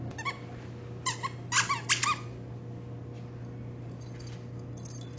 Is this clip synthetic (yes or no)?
no